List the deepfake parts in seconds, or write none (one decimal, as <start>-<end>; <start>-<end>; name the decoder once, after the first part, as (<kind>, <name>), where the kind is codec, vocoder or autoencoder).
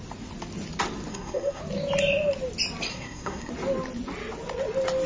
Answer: 1.1-1.6 (codec, SNAC); 2.9-3.5